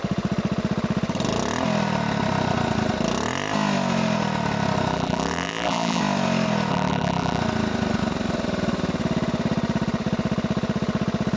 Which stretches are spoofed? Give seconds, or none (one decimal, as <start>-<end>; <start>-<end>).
4.9-6.0; 6.7-7.4